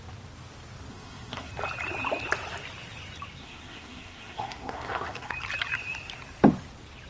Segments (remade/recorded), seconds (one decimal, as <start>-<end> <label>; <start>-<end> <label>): 0.0-0.9 recorded; 0.9-1.5 remade; 1.5-3.4 recorded; 3.4-5.3 remade; 5.3-7.1 recorded